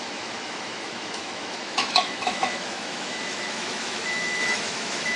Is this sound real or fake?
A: fake